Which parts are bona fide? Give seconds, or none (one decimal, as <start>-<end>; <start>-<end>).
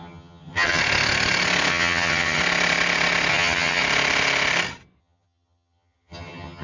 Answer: 0.8-1.7; 2.4-3.3; 3.8-5.0